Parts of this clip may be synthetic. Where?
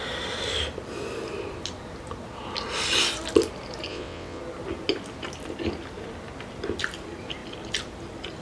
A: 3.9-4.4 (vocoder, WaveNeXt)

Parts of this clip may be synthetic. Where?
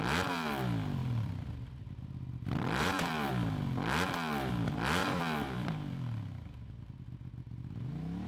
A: 1.0-3.3 (vocoder, BigVGAN v2); 5.0-6.7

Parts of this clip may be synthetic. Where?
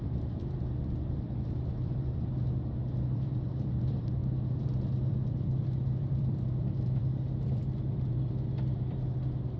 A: 0.0-9.6 (vocoder, BigVGAN v2)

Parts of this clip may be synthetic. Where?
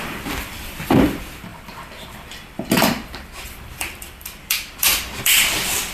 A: 0.0-5.9 (vocoder, BigVGAN v2)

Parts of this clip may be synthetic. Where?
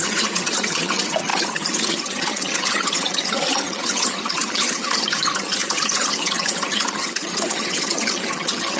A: 0.0-8.8 (vocoder, HiFi-GAN)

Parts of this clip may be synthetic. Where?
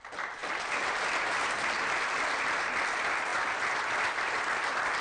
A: 0.4-1.8 (vocoder, BigVGAN v2); 3.3-4.4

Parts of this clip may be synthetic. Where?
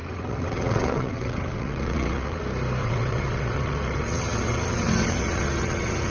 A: 0.0-2.4 (vocoder, WaveNeXt); 2.8-6.1